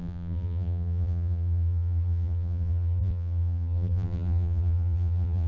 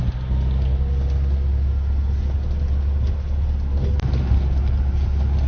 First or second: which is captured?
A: second